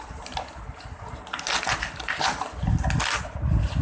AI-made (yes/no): no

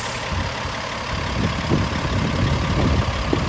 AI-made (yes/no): no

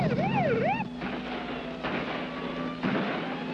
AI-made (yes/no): no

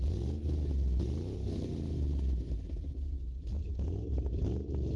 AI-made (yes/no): no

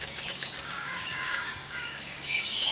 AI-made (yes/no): yes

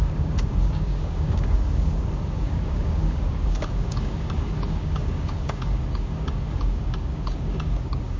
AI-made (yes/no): yes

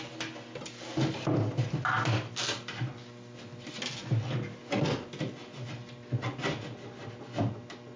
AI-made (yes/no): no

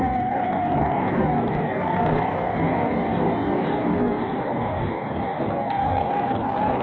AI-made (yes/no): yes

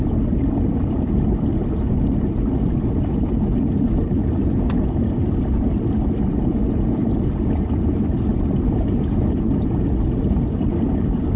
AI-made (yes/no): no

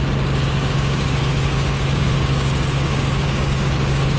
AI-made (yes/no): yes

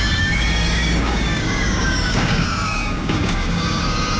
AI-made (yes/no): yes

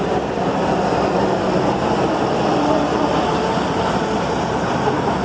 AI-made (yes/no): no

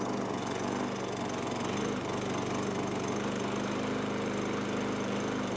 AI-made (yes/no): no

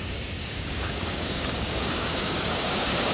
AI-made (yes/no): yes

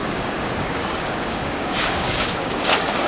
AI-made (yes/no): yes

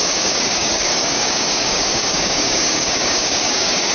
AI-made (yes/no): yes